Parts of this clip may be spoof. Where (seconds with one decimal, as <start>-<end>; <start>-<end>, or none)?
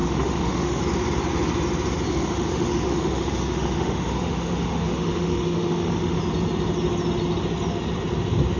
0.0-0.8; 2.1-6.2